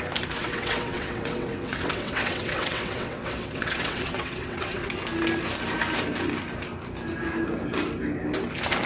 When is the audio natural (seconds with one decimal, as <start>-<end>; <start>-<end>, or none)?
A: 0.0-0.4; 4.9-8.9